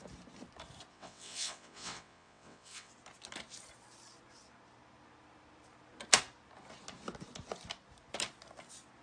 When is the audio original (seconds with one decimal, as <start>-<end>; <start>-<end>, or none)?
0.0-0.9; 2.9-9.0